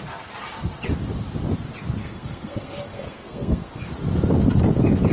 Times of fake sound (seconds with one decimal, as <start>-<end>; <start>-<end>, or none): 2.0-3.9